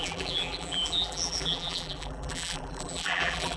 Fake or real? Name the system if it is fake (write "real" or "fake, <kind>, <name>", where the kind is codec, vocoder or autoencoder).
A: fake, vocoder, BigVGAN v2